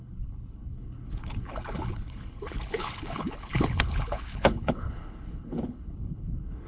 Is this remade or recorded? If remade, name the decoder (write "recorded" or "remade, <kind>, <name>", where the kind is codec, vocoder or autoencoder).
remade, codec, HILCodec